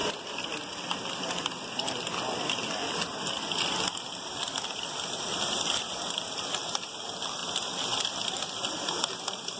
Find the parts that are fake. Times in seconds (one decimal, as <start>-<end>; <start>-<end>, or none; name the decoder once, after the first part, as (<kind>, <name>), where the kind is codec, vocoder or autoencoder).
none